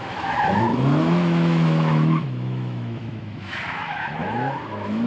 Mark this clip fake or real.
fake